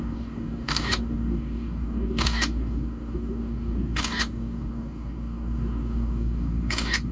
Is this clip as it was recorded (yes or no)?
no